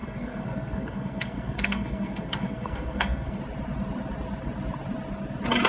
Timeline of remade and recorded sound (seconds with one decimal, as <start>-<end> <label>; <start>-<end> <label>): 0.0-3.4 remade; 3.4-5.7 recorded